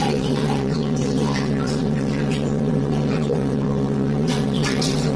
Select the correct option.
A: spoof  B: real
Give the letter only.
A